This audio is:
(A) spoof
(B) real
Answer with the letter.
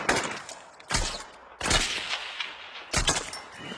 B